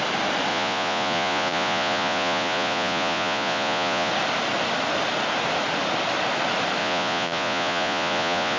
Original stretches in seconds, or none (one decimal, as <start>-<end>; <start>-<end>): 0.0-0.5; 4.1-6.8